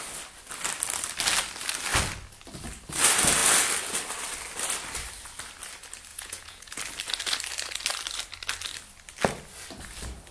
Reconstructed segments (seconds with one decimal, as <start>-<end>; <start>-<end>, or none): 6.1-6.8